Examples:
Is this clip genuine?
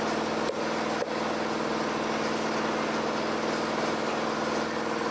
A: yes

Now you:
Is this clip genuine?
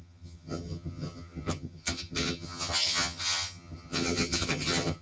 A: no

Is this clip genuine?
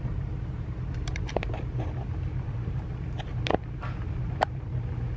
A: no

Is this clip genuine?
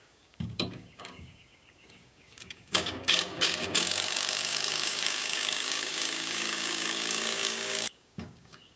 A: no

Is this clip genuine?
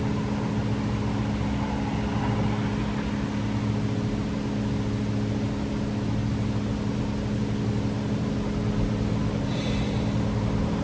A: yes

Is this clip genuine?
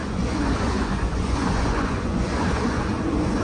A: no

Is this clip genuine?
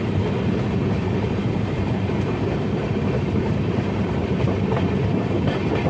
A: no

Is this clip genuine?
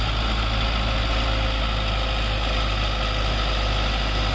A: yes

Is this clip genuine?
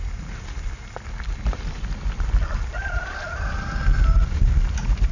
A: yes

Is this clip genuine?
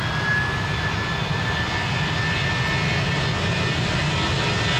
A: yes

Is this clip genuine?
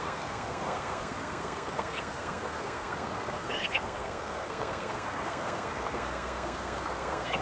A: no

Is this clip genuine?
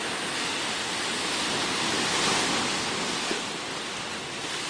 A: yes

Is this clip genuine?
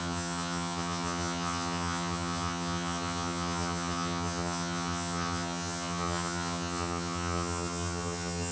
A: no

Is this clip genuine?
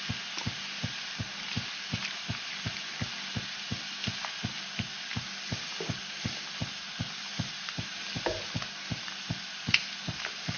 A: yes